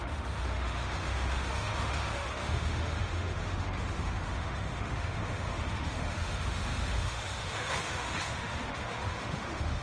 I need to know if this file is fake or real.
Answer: fake